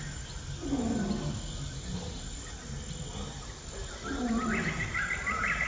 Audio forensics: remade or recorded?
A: recorded